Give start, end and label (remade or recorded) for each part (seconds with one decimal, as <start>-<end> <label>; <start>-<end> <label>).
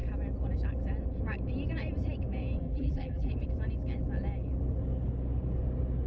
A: 0.0-2.6 recorded; 2.6-3.3 remade; 3.3-6.1 recorded